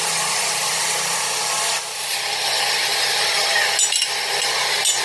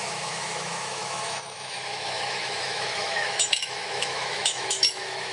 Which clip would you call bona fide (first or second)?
first